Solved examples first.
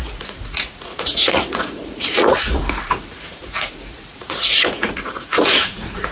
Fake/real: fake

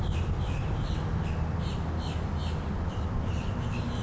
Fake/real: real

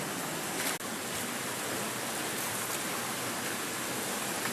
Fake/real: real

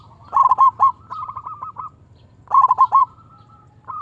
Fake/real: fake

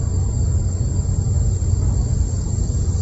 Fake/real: real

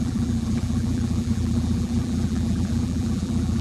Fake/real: fake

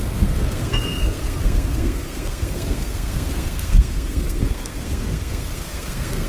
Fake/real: fake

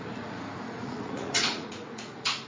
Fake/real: fake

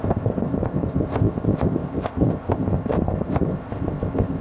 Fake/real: fake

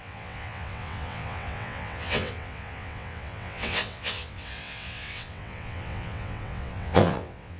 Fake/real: fake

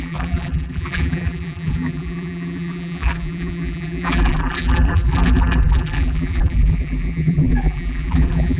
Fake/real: fake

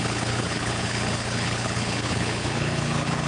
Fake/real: fake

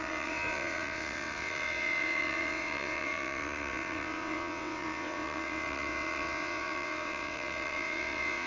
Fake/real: fake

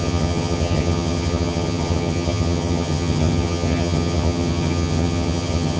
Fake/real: fake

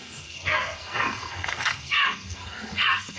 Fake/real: fake